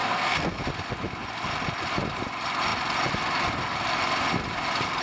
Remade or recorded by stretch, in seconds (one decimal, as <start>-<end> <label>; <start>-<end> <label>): 0.0-0.6 remade; 0.6-5.0 recorded